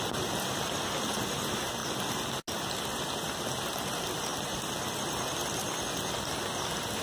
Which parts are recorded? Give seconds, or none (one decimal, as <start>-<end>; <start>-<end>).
0.0-7.0